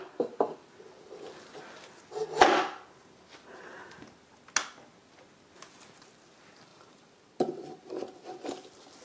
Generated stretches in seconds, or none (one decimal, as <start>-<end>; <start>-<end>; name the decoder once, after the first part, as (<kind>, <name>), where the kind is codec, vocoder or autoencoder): 6.7-7.9 (vocoder, BigVGAN v2)